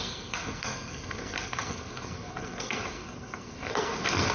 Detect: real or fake fake